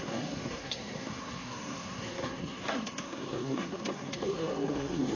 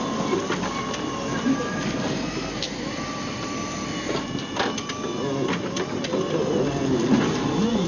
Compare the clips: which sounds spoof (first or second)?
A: first